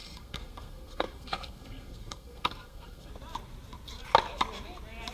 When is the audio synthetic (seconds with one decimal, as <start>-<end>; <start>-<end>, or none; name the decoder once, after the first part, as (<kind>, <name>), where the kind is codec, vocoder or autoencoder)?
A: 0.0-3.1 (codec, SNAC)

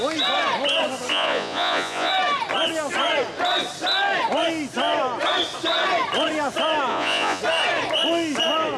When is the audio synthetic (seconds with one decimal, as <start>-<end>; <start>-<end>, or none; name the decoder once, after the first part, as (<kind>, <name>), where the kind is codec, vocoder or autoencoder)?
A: 1.1-2.1 (vocoder, Vocos); 6.9-7.4

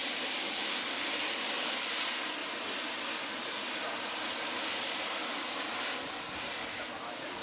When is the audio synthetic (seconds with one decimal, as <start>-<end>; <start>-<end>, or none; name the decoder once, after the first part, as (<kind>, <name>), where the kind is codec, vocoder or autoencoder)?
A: 0.0-1.9 (vocoder, BigVGAN v2); 2.4-3.0